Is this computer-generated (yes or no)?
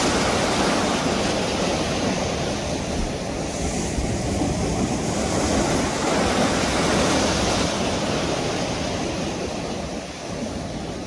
no